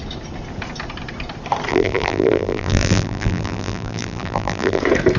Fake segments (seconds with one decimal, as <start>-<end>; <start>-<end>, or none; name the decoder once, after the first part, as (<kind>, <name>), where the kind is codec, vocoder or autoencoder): 1.7-4.8 (vocoder, BigVGAN v2)